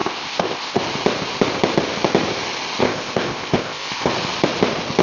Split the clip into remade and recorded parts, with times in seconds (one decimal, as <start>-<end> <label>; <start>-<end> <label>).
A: 0.0-0.8 remade; 0.8-2.8 recorded; 2.8-4.1 remade; 4.1-5.0 recorded